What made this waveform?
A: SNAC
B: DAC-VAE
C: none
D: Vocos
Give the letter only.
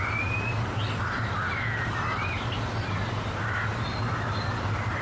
C